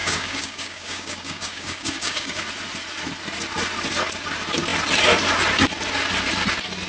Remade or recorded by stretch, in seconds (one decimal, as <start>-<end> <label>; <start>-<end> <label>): 0.0-2.4 remade; 2.4-6.9 recorded